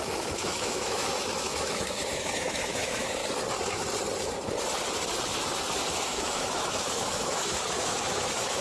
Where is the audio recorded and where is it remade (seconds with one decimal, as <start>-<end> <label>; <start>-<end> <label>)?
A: 0.0-3.2 remade; 3.2-5.9 recorded; 5.9-8.6 remade